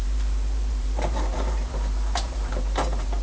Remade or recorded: remade